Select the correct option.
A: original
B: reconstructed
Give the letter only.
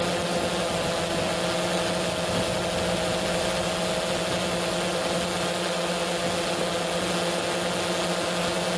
A